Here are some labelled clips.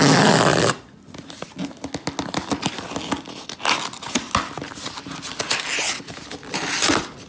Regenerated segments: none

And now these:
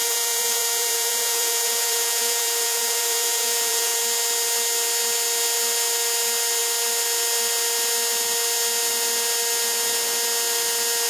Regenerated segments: 0.0-4.0 (vocoder, Vocos)

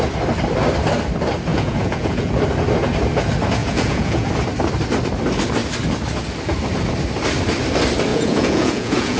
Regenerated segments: 1.5-2.3 (vocoder, Vocos); 3.6-4.3; 8.1-9.2

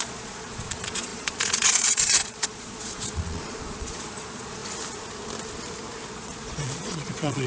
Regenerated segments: 0.0-4.6 (vocoder, Vocos); 6.1-7.5

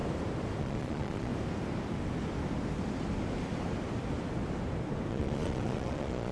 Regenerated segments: 0.6-1.3 (vocoder, Vocos); 5.1-6.3